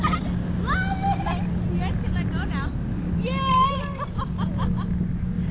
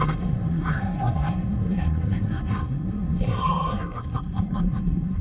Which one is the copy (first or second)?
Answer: second